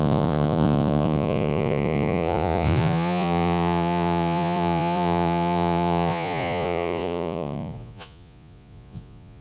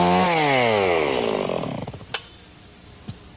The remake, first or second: first